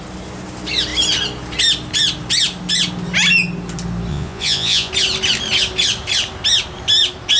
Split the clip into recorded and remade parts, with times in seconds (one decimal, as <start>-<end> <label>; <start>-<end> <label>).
0.0-4.1 recorded; 4.1-4.9 remade; 4.9-7.4 recorded

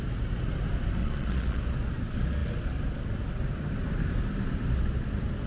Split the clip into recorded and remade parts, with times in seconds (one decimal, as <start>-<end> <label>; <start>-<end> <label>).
0.0-1.0 recorded; 1.0-1.6 remade; 1.6-5.5 recorded

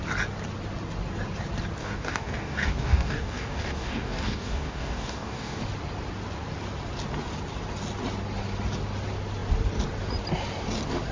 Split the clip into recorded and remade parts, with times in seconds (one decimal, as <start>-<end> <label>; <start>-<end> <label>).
0.0-1.8 recorded; 1.8-5.6 remade; 5.6-11.1 recorded

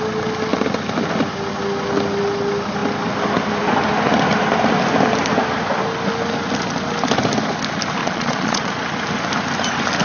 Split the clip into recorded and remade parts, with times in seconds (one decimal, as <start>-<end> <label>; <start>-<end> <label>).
0.0-8.0 recorded; 8.0-8.7 remade; 8.7-10.0 recorded

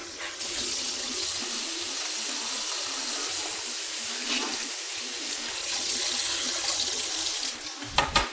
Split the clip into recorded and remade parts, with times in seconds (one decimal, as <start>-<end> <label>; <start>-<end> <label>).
0.0-1.4 remade; 1.4-5.6 recorded; 5.6-7.1 remade; 7.1-8.3 recorded

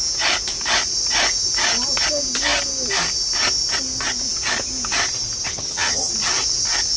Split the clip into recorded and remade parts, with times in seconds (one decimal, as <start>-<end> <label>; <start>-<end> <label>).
0.0-5.5 recorded; 5.5-6.1 remade; 6.1-7.0 recorded

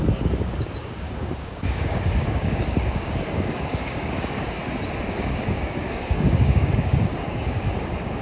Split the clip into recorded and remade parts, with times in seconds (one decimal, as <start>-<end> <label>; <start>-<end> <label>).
0.0-4.6 remade; 4.6-5.1 recorded; 5.1-8.2 remade